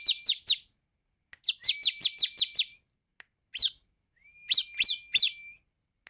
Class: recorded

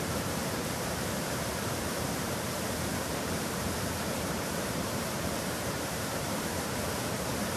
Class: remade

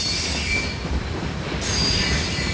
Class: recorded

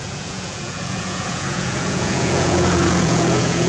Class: remade